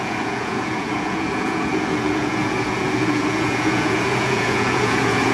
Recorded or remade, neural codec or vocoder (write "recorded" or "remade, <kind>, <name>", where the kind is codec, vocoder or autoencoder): remade, vocoder, Vocos